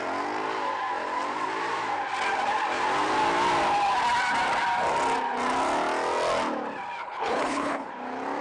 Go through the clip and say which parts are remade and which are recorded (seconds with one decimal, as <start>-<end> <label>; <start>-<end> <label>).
0.0-7.0 recorded; 7.0-7.9 remade; 7.9-8.4 recorded